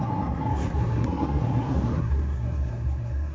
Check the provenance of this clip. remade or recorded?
remade